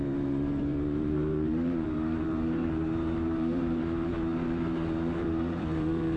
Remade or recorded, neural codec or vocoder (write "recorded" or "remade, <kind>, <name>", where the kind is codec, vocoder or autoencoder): remade, vocoder, BigVGAN v2